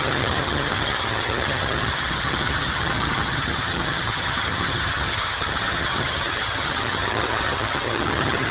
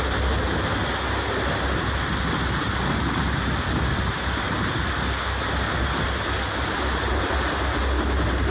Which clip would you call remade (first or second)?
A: first